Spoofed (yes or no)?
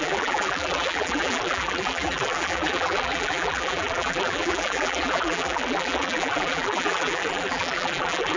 yes